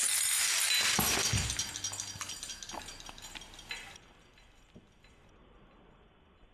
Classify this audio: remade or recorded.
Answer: recorded